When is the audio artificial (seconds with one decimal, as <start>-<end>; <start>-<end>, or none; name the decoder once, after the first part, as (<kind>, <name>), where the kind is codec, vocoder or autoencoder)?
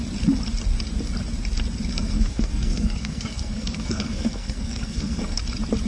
1.9-5.4 (codec, SNAC)